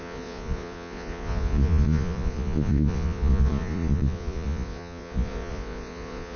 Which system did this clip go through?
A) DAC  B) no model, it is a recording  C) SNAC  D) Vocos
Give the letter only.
D